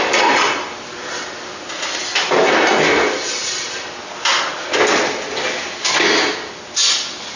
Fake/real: real